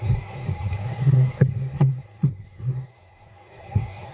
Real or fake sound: fake